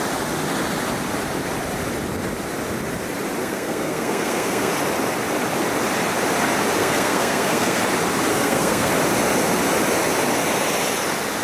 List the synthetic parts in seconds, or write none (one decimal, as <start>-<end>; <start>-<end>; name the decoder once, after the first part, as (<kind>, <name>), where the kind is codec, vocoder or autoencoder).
3.4-4.7 (codec, SNAC); 6.8-7.8; 8.3-8.9